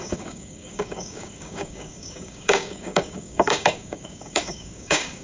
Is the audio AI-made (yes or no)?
yes